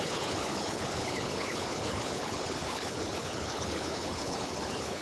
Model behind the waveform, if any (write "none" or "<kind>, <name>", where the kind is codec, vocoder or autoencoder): codec, HILCodec